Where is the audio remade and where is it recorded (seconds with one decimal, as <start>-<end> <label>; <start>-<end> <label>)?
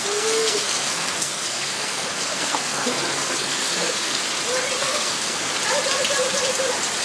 0.0-4.2 remade; 4.2-4.8 recorded; 4.8-5.5 remade; 5.5-7.0 recorded